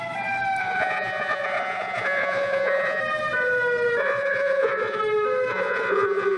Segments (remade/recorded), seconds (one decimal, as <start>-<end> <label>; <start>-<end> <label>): 0.0-0.6 recorded; 0.6-3.0 remade; 3.0-4.0 recorded; 4.0-5.0 remade; 5.0-5.5 recorded; 5.5-6.4 remade